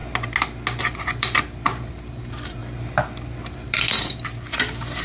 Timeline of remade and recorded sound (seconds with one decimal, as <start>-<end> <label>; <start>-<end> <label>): 0.0-0.8 recorded; 0.8-2.6 remade; 2.6-3.6 recorded; 3.6-5.0 remade